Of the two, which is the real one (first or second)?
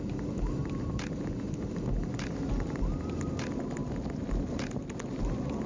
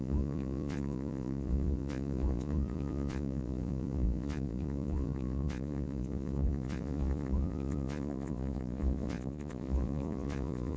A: first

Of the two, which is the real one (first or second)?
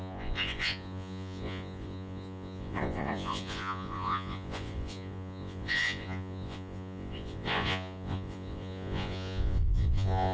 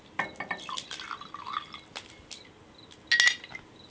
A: second